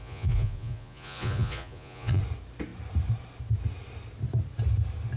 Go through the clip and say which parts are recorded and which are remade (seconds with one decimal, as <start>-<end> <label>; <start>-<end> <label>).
0.0-2.2 remade; 2.2-5.2 recorded